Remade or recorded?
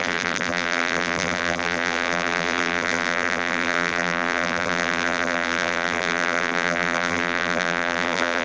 remade